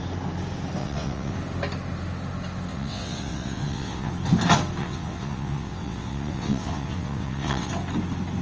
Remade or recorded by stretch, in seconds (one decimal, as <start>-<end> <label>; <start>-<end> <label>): 0.0-0.8 recorded; 0.8-1.3 remade; 1.3-2.7 recorded; 2.7-4.1 remade; 4.1-4.8 recorded; 4.8-7.7 remade; 7.7-8.4 recorded